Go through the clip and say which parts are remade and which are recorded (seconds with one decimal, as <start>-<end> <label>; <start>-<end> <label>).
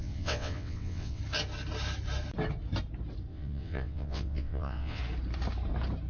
0.0-1.2 remade; 1.2-3.3 recorded; 3.3-5.0 remade; 5.0-6.1 recorded